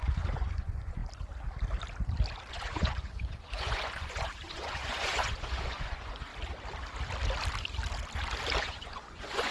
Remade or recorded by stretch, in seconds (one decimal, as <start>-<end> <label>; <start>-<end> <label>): 0.0-1.0 remade; 1.0-2.5 recorded; 2.5-6.3 remade; 6.3-8.6 recorded; 8.6-9.5 remade